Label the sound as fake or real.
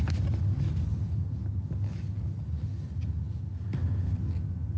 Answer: real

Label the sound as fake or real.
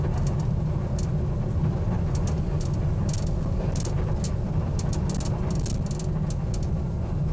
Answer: real